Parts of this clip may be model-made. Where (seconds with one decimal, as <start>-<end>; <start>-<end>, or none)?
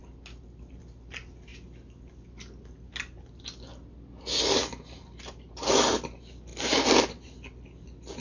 none